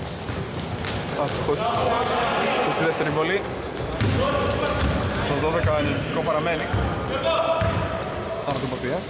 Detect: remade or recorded recorded